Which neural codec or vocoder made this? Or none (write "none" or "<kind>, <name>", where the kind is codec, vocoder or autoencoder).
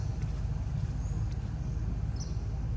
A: none